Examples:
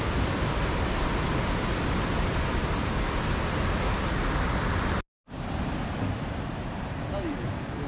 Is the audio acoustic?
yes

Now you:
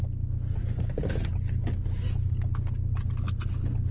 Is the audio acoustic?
yes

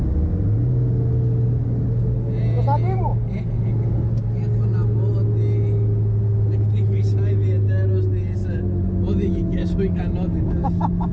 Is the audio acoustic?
yes